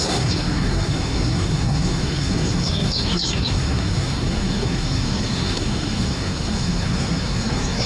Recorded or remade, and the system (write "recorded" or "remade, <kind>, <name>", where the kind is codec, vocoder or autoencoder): remade, codec, SNAC